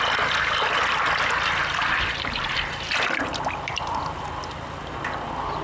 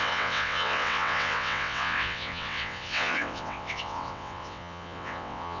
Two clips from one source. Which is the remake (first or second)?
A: second